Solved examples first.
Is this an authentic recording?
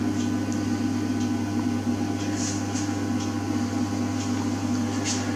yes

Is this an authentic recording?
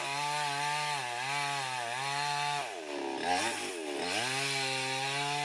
yes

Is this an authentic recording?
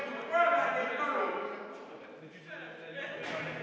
yes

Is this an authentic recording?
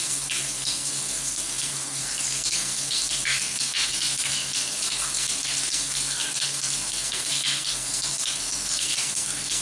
no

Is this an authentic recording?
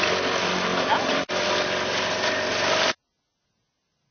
yes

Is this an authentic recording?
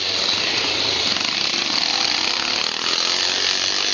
yes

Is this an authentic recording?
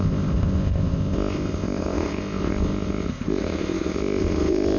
no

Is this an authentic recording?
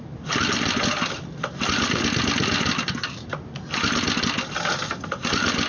yes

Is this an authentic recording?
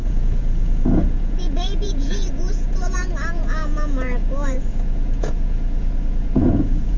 no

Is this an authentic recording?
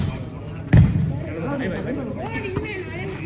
yes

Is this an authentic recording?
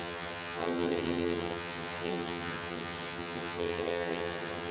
no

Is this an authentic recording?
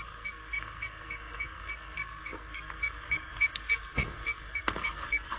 no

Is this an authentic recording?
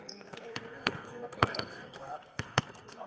no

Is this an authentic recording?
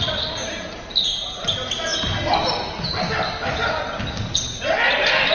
yes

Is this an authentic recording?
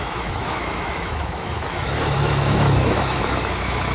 no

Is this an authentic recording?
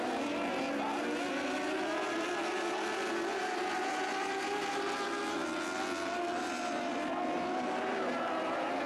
yes